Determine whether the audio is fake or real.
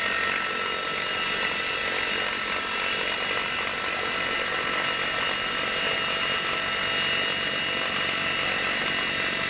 real